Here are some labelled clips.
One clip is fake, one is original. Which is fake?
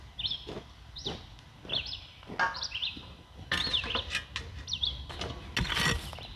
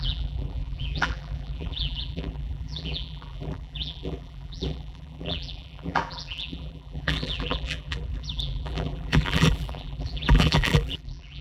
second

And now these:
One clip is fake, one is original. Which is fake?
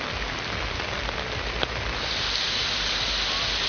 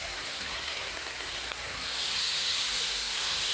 second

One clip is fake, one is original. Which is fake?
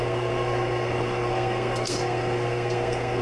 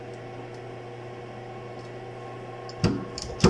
first